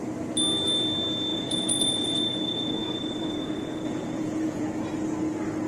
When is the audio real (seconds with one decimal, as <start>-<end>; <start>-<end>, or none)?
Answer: 0.0-1.3; 4.7-5.7